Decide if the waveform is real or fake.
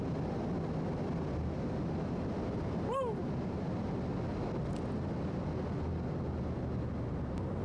real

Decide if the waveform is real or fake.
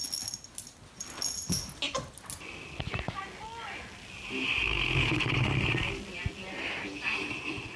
real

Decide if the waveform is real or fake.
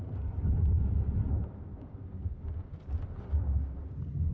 real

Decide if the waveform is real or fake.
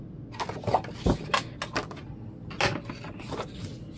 real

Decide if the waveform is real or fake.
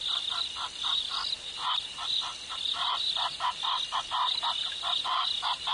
real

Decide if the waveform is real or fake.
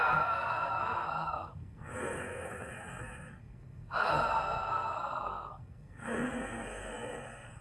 fake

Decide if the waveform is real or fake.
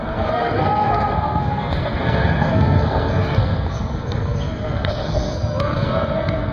fake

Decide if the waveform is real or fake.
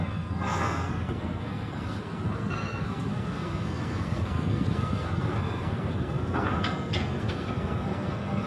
fake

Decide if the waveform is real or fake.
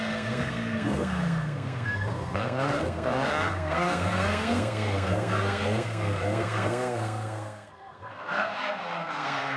fake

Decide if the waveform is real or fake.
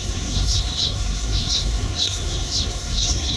fake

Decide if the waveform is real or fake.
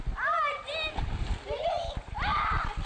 real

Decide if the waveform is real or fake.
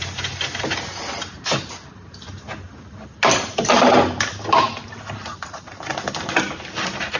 real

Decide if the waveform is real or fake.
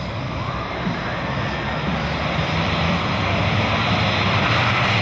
real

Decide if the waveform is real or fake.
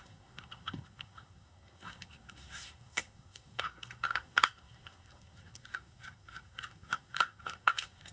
fake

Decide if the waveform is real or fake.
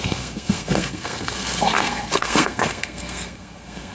fake